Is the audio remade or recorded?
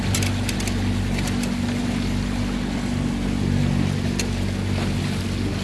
recorded